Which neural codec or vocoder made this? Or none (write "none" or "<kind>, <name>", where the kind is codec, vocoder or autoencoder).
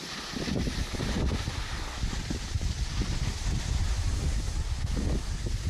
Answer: none